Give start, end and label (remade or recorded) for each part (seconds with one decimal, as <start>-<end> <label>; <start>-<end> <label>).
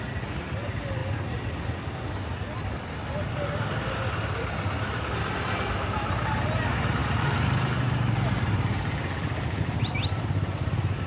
0.0-11.1 recorded